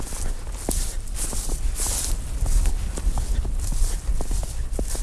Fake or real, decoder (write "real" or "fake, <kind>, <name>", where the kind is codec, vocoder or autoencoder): real